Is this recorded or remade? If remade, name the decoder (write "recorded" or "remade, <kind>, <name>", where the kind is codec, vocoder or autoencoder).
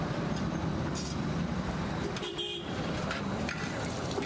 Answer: remade, vocoder, BigVGAN v2